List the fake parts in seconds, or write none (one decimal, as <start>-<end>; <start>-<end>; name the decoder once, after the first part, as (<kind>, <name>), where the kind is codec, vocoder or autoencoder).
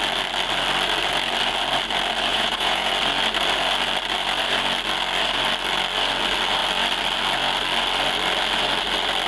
2.3-2.9 (vocoder, Vocos)